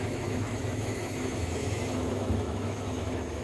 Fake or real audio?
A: fake